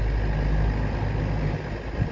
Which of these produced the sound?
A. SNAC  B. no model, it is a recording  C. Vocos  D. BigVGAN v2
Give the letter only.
B